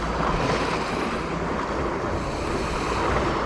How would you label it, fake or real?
real